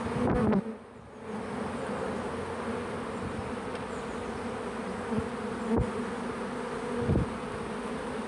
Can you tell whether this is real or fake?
real